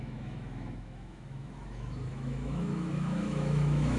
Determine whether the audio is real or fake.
fake